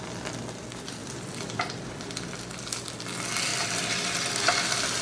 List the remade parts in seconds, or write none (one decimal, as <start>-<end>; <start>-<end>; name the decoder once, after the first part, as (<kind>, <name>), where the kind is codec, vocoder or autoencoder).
1.0-1.6 (vocoder, BigVGAN v2); 3.5-4.3

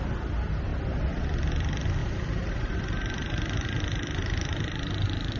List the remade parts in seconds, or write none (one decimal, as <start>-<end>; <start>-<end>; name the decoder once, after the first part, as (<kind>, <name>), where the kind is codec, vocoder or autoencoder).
2.0-5.4 (vocoder, BigVGAN v2)